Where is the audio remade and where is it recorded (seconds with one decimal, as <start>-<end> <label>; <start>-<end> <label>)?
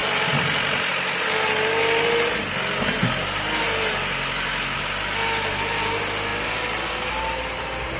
0.0-8.0 recorded